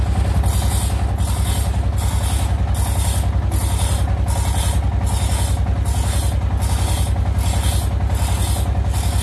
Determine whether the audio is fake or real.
real